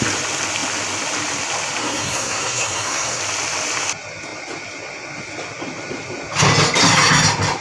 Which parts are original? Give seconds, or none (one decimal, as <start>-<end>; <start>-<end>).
0.0-1.8; 3.2-7.6